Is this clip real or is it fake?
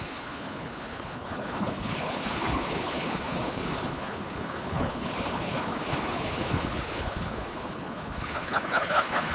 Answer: fake